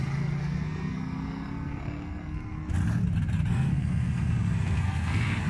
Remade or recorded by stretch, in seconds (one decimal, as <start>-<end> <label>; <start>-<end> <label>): 0.0-0.4 recorded; 0.4-2.7 remade; 2.7-3.5 recorded; 3.5-5.5 remade